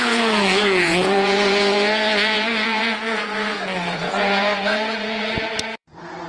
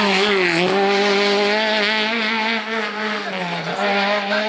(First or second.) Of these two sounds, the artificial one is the first